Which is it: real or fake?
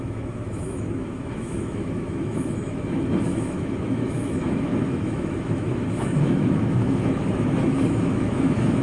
fake